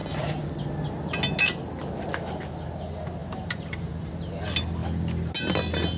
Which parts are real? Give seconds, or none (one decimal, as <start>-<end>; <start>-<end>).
0.0-3.2; 4.1-6.0